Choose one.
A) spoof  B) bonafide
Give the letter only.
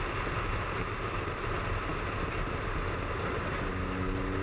B